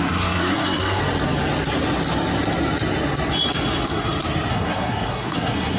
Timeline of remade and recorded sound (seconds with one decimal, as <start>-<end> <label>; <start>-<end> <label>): 0.0-1.0 remade; 1.0-4.5 recorded; 4.5-5.8 remade